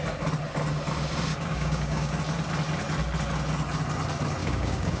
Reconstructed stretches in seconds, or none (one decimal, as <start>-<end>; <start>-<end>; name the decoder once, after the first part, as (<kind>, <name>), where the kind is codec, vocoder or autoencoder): 1.3-2.1 (codec, DAC); 4.4-5.0